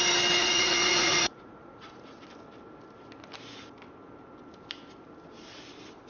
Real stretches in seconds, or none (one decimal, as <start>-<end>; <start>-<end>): 0.0-0.4; 2.2-6.1